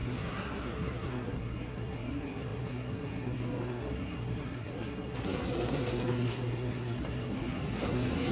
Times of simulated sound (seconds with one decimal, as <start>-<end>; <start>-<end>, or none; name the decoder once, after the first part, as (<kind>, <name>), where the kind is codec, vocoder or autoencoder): 0.0-8.3 (codec, SNAC)